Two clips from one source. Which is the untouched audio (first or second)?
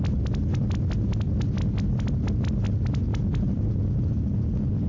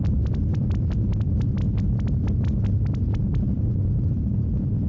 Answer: first